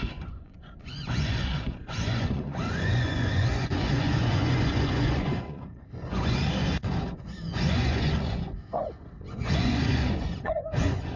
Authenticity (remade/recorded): remade